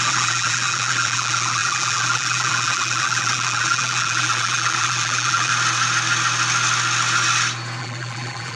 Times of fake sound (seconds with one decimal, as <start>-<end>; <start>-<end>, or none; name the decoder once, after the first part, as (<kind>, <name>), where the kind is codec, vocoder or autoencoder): 0.0-5.5 (vocoder, BigVGAN v2); 7.8-8.6